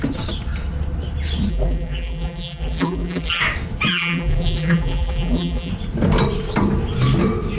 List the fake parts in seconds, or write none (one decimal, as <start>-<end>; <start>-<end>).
1.5-3.4; 3.9-5.7